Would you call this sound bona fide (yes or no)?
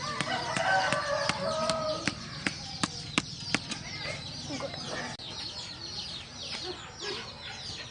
yes